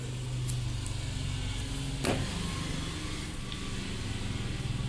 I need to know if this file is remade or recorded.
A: recorded